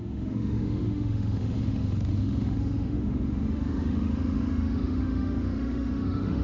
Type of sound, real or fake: fake